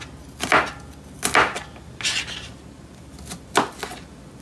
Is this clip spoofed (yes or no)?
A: no